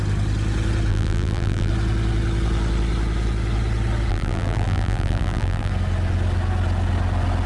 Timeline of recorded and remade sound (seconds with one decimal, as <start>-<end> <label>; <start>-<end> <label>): 0.0-0.9 recorded; 0.9-1.7 remade; 1.7-4.1 recorded; 4.1-5.7 remade; 5.7-7.5 recorded